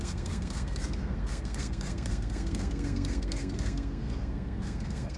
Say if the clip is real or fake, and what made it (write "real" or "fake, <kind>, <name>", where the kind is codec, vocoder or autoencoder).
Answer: fake, codec, SNAC